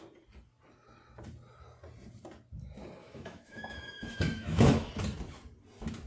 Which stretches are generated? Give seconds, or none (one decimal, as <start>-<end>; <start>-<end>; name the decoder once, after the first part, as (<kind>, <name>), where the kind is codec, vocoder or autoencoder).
3.0-4.9 (autoencoder, DAC-VAE)